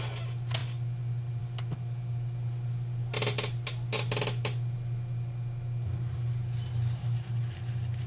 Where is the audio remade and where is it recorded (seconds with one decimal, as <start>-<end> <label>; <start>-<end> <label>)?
0.0-8.1 recorded